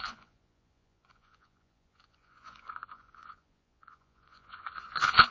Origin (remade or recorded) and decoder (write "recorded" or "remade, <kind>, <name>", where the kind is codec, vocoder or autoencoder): remade, vocoder, Vocos